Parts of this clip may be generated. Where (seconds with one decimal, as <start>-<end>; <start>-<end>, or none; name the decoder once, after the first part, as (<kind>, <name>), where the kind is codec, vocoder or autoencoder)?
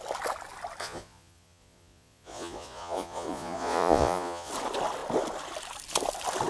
0.8-4.5 (vocoder, Vocos)